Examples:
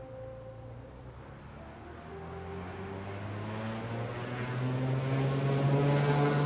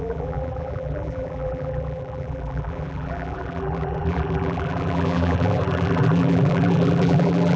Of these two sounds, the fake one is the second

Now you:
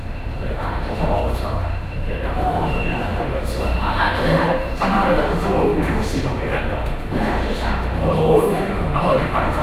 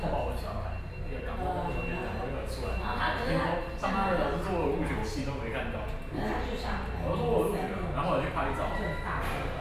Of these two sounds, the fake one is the first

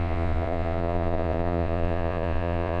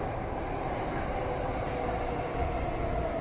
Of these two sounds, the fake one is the first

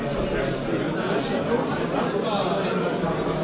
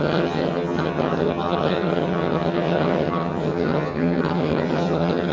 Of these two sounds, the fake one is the second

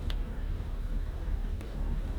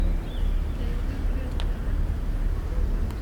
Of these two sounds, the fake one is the first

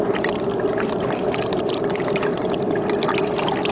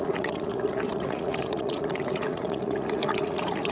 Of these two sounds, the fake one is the second